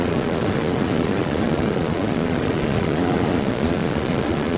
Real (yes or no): no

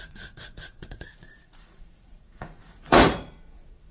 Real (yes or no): no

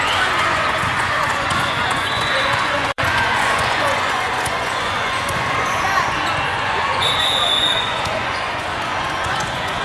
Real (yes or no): no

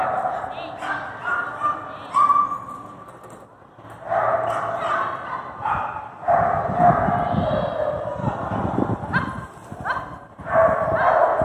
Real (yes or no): yes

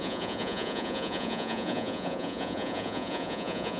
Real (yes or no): no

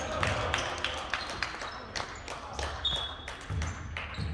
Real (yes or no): yes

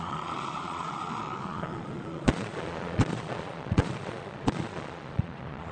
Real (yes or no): no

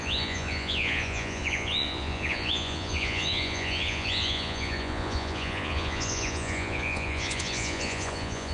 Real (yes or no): no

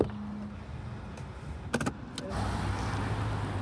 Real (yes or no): yes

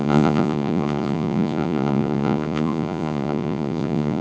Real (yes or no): no